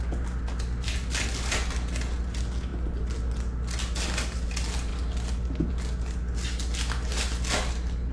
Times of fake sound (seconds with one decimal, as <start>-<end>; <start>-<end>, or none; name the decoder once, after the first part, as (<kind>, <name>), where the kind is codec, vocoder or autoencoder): none